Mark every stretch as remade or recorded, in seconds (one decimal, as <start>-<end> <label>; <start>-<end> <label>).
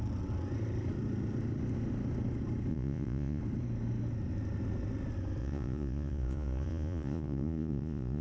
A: 0.0-2.7 recorded; 2.7-3.4 remade; 3.4-5.4 recorded; 5.4-8.2 remade